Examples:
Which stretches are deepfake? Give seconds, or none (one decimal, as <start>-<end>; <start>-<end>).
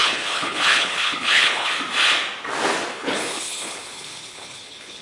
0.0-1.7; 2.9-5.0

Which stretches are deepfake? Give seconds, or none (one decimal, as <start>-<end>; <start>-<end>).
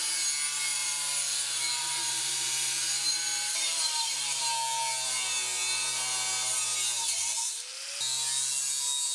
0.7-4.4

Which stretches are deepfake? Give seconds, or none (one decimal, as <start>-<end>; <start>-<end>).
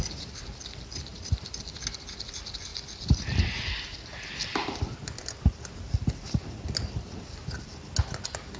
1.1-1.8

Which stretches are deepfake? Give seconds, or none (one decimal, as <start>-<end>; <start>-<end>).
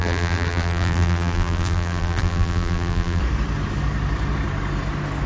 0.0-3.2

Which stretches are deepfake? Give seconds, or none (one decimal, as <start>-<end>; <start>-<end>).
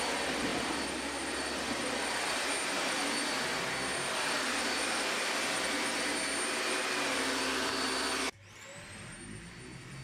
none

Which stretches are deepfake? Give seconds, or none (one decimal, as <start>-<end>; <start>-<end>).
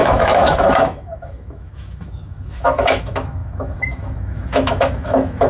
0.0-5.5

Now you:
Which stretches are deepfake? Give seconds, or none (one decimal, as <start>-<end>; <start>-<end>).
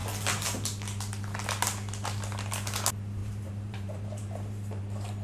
3.2-4.8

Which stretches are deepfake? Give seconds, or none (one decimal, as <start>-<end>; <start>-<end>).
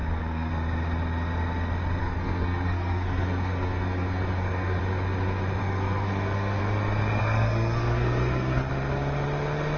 0.0-0.5; 2.0-4.8; 5.6-6.6; 7.2-8.7